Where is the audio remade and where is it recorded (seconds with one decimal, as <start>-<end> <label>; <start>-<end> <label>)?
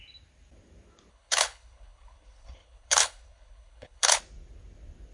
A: 0.0-1.1 recorded; 1.1-4.2 remade; 4.2-5.1 recorded